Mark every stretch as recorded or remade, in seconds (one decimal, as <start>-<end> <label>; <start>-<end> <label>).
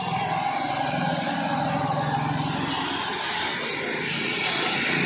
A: 0.0-5.1 recorded